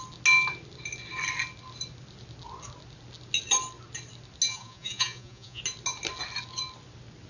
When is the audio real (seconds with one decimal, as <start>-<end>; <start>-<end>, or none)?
0.0-4.5; 5.6-7.3